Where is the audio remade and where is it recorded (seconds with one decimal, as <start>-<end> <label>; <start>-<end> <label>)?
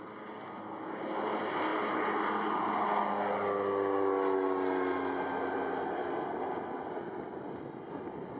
0.0-8.4 recorded